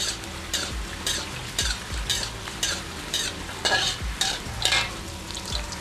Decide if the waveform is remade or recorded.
remade